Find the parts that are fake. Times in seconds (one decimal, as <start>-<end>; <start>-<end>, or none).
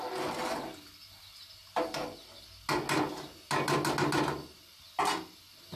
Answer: none